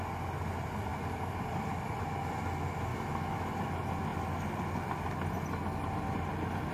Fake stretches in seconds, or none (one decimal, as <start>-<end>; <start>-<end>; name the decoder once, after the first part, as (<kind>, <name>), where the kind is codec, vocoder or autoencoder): 2.9-3.6 (autoencoder, DAC-VAE)